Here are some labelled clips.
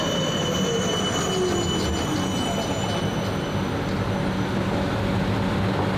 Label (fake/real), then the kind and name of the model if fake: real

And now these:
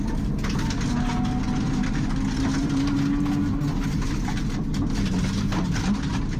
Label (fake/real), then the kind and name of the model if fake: real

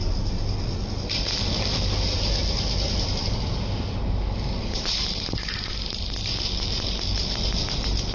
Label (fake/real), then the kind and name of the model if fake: real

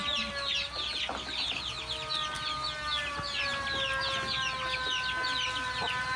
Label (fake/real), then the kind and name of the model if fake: real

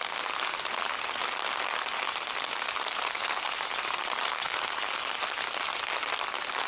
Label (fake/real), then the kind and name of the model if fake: real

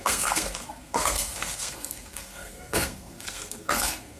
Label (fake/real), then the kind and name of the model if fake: fake, codec, SNAC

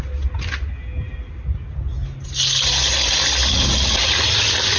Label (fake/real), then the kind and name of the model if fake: real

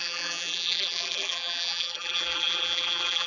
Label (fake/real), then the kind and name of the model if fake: fake, vocoder, BigVGAN v2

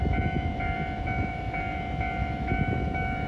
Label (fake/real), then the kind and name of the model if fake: fake, autoencoder, DAC-VAE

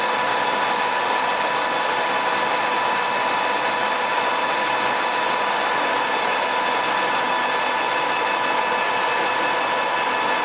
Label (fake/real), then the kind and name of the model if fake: real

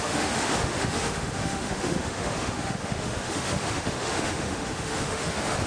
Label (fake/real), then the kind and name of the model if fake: fake, autoencoder, DAC-VAE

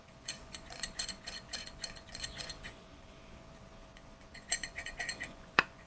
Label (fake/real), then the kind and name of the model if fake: fake, vocoder, Vocos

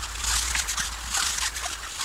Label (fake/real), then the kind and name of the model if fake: real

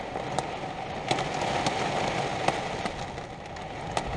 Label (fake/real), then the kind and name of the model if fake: real